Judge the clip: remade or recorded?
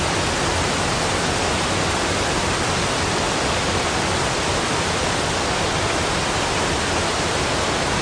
recorded